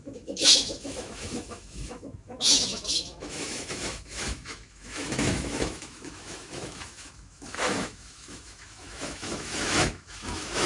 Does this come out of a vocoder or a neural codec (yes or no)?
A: yes